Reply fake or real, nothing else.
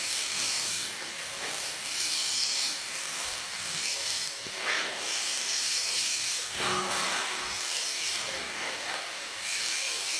fake